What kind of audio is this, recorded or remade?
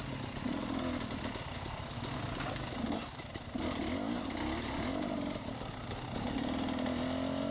recorded